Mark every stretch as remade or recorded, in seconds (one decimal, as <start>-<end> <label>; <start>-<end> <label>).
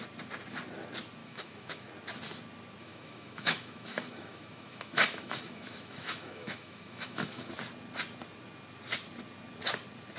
0.0-1.2 recorded; 1.2-1.9 remade; 1.9-2.8 recorded; 2.8-7.5 remade; 7.5-10.2 recorded